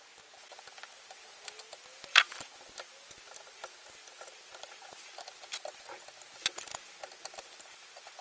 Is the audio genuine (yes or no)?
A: yes